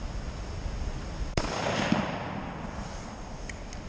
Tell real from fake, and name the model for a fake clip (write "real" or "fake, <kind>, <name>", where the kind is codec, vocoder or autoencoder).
real